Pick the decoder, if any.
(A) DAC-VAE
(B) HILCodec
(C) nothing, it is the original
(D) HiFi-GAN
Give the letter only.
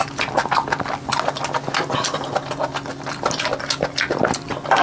C